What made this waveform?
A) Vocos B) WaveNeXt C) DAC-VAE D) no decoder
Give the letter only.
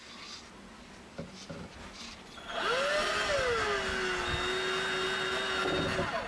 D